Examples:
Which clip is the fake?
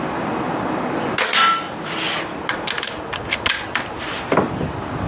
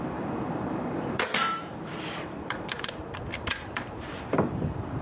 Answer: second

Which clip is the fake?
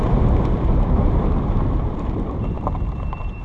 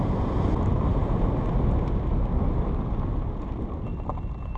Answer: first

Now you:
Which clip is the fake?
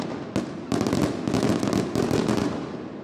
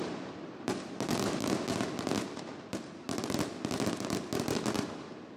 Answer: second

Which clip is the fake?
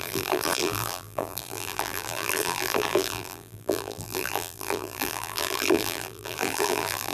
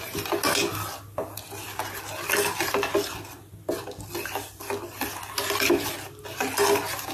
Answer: first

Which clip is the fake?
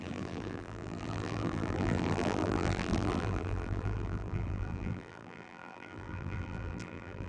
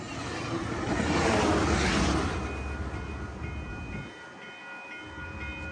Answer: first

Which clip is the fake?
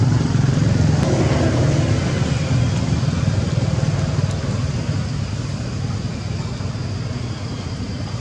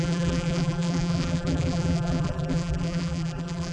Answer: second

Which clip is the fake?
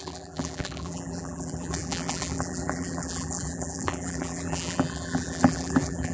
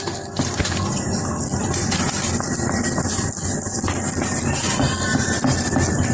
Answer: first